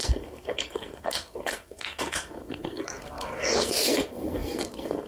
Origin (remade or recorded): remade